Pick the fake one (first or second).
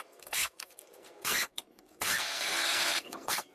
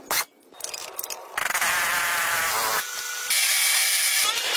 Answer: first